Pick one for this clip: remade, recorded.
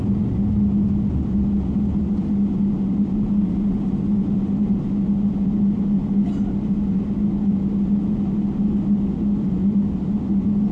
recorded